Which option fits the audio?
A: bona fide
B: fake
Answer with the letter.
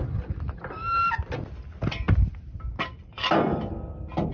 A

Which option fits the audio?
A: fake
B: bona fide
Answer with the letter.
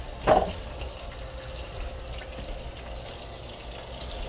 B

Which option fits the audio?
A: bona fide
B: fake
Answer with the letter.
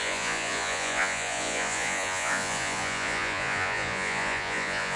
B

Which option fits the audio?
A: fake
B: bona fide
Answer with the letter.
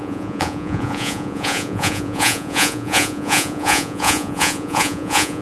A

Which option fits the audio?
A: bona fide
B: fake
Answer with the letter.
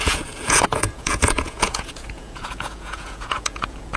B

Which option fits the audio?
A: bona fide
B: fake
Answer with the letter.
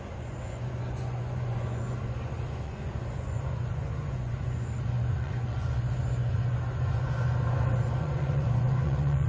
B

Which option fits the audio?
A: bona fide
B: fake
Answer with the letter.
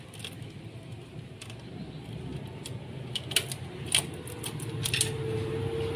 A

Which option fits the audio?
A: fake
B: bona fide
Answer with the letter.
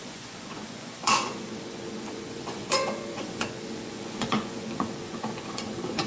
A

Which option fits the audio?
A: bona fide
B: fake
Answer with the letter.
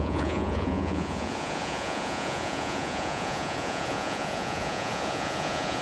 B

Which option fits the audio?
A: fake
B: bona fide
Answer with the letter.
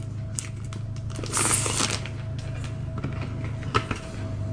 B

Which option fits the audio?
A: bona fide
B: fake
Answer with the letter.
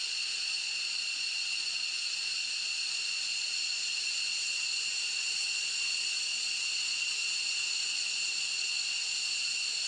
B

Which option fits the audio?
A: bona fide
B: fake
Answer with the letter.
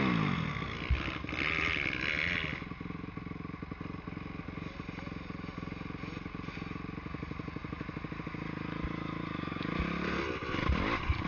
A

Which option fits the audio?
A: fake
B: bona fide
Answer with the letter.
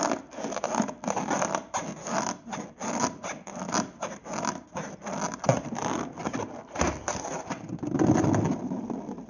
B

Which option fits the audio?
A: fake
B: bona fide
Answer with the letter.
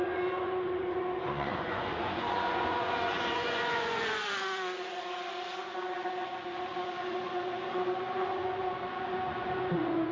A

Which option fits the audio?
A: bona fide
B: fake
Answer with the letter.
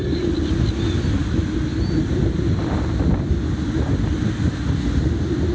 A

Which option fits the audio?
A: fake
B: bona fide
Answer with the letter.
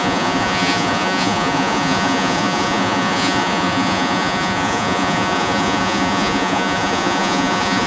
A